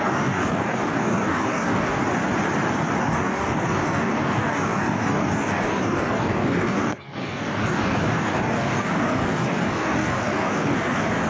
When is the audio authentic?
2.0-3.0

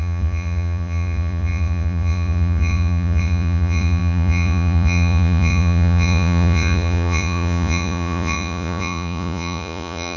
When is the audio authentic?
none

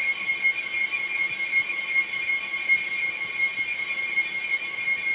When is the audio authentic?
0.0-5.1

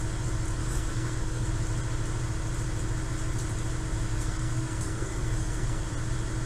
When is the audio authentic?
0.0-0.6; 1.5-4.1; 5.9-6.5

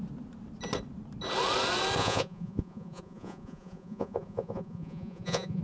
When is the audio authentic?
0.0-2.0